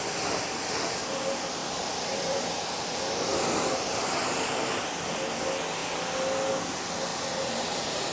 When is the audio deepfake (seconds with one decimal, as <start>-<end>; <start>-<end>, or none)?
1.6-3.0; 7.1-8.1